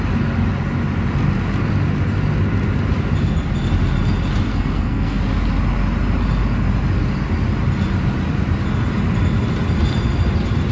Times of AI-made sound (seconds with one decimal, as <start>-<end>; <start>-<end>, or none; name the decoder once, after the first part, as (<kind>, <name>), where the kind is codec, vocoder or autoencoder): 4.5-5.2 (codec, SNAC)

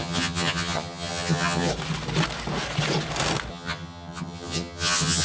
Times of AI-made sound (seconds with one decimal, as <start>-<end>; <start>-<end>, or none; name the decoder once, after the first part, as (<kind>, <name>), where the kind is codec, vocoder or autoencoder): 0.0-1.7 (vocoder, HiFi-GAN); 3.5-5.2

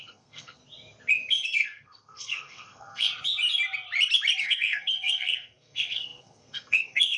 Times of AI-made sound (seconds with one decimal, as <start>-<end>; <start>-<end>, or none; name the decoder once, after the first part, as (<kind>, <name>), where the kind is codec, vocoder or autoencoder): 0.0-0.6 (codec, SNAC); 1.3-3.1; 4.4-7.2

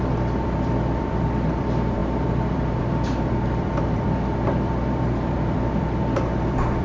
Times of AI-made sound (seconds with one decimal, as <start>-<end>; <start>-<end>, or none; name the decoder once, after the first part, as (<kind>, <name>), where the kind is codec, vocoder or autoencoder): 0.0-6.8 (vocoder, BigVGAN v2)

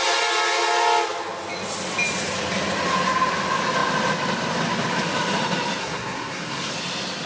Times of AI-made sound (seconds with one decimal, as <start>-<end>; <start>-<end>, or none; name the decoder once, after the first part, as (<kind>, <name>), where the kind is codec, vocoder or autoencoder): 5.8-6.7 (codec, SNAC)

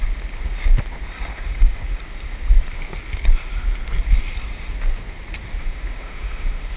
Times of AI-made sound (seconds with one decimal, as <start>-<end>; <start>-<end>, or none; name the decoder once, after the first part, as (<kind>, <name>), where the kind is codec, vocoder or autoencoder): 1.3-2.0 (autoencoder, DAC-VAE); 5.6-6.8

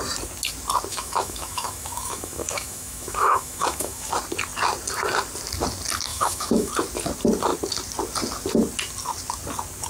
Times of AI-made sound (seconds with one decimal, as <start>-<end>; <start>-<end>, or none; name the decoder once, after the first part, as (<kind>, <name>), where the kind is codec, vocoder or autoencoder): 0.9-4.1 (autoencoder, DAC-VAE); 6.1-6.7

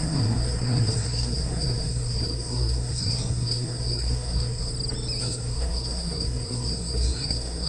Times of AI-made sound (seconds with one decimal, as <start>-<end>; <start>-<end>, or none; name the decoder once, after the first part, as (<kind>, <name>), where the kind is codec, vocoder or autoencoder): 0.0-4.7 (codec, SNAC); 5.2-7.7